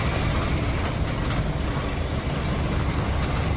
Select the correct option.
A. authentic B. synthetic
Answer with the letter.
A